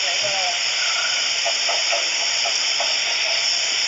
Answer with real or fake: real